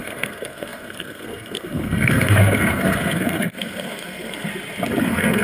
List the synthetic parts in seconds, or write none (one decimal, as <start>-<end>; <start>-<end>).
0.0-4.5; 5.0-5.4